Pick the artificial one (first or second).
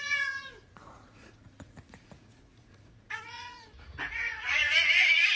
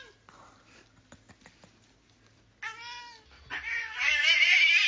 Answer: first